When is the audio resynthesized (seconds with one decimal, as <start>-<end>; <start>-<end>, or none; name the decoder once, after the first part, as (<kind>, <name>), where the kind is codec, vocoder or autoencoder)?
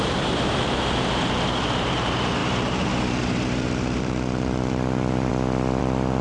0.0-5.3 (vocoder, BigVGAN v2); 5.8-6.2